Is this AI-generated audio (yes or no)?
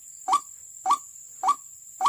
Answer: no